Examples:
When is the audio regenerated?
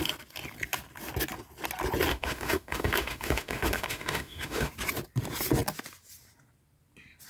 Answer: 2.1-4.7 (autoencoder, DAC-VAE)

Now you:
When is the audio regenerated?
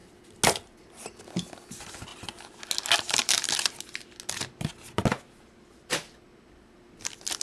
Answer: none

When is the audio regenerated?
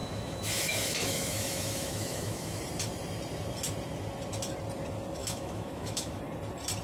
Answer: 0.0-2.6 (autoencoder, DAC-VAE); 5.2-6.2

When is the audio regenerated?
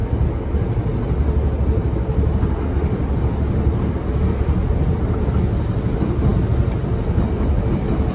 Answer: none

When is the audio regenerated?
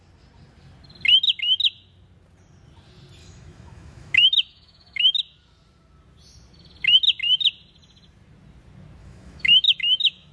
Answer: 3.2-5.2 (autoencoder, DAC-VAE); 9.0-10.3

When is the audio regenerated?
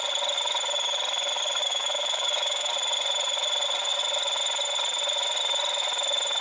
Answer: 1.6-2.7 (autoencoder, DAC-VAE)